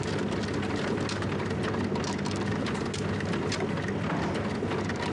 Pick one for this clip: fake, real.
real